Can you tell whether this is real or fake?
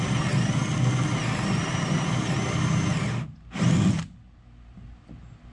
real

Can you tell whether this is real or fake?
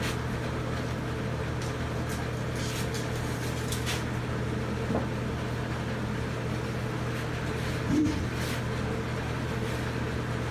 real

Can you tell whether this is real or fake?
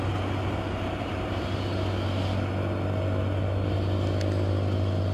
real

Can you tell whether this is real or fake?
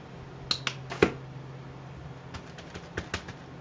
real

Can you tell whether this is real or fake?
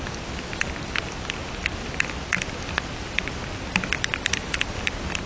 real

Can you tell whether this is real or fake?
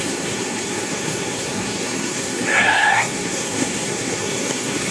fake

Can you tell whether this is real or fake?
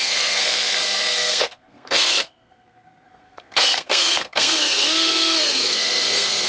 fake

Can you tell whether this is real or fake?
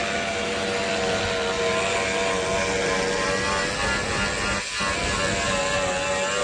real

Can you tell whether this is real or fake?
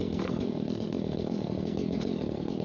fake